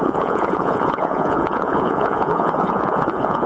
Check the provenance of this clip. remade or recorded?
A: remade